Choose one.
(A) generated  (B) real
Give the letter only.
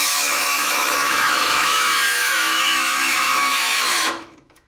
A